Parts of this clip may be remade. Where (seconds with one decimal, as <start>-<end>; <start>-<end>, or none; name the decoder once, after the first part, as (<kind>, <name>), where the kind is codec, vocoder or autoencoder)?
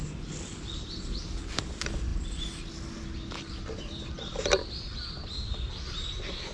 none